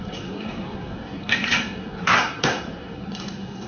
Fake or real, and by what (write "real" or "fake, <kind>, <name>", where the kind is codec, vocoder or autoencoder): fake, codec, SNAC